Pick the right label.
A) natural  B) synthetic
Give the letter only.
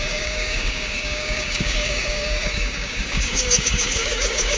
B